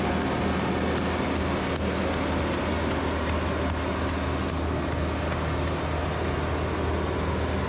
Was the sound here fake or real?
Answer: real